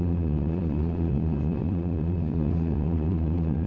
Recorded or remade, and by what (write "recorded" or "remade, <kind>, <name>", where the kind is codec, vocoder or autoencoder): remade, vocoder, Vocos